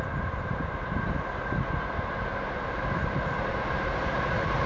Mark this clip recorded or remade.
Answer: recorded